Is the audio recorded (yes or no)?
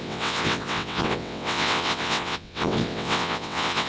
no